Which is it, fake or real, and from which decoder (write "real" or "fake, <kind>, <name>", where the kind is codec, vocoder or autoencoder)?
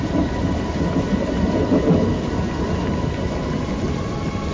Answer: fake, vocoder, BigVGAN v2